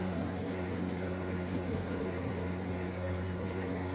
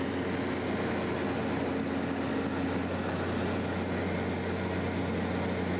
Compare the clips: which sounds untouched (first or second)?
second